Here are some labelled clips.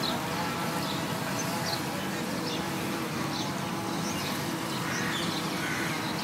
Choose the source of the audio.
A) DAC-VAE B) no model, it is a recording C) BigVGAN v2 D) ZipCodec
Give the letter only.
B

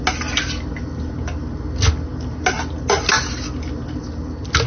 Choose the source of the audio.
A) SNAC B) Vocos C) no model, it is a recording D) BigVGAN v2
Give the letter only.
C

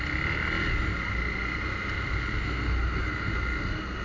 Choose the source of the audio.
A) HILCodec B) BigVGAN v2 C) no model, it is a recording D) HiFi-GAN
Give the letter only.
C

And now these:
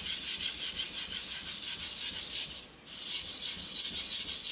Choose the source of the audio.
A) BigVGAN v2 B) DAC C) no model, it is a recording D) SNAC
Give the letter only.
C